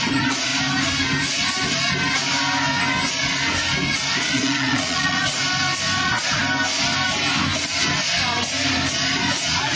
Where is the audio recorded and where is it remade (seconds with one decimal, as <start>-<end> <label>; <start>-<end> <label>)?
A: 0.0-0.5 remade; 0.5-4.3 recorded; 4.3-5.4 remade; 5.4-6.0 recorded; 6.0-6.4 remade; 6.4-9.4 recorded; 9.4-9.8 remade